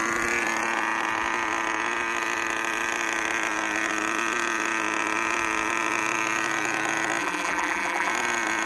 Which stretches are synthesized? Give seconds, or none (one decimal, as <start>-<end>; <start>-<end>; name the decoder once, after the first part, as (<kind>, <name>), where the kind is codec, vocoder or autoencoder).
7.2-8.1 (vocoder, BigVGAN v2)